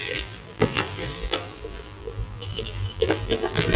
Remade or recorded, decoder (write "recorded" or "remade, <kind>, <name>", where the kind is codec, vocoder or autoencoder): remade, vocoder, BigVGAN v2